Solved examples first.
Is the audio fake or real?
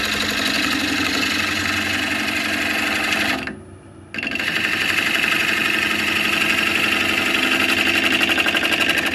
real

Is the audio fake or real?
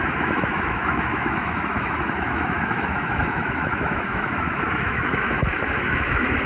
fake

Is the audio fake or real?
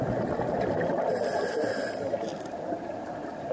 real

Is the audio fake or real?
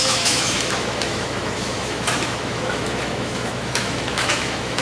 fake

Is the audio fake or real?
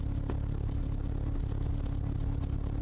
real